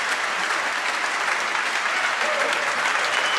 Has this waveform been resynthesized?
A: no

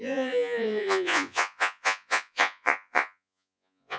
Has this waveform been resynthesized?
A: yes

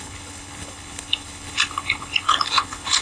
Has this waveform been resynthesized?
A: yes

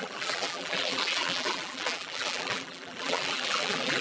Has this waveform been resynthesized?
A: yes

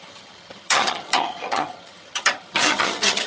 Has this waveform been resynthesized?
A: yes